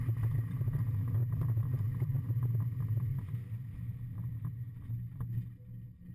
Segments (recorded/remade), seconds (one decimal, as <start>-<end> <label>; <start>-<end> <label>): 0.0-6.1 recorded